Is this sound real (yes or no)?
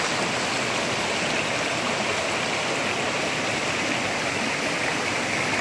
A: yes